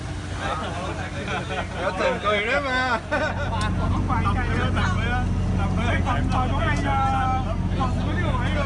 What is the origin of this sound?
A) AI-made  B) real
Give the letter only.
B